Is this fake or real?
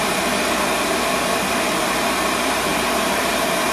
fake